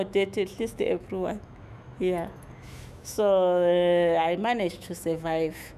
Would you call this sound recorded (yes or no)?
no